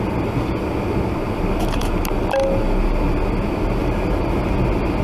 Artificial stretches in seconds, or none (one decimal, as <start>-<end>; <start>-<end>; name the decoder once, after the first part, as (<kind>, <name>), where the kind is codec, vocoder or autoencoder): 3.8-4.4 (vocoder, BigVGAN v2)